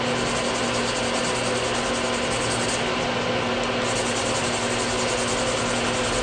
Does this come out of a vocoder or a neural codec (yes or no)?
no